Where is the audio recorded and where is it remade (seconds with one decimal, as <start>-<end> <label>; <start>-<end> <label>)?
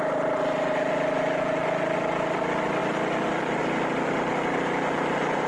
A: 0.0-5.5 recorded